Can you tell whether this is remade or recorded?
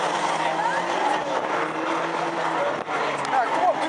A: recorded